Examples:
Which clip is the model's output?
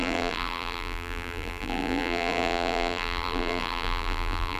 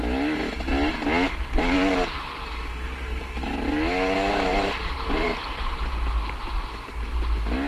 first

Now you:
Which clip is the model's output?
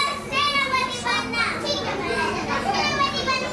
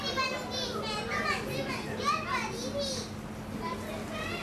first